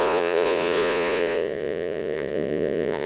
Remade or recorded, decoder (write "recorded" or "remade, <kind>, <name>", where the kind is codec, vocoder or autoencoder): remade, vocoder, Vocos